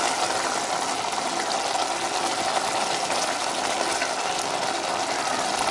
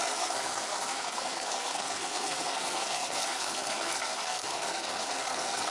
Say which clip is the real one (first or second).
first